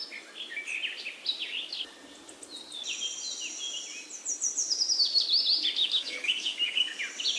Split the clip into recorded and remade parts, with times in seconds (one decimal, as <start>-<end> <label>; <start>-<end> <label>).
0.0-5.8 recorded; 5.8-7.0 remade; 7.0-7.4 recorded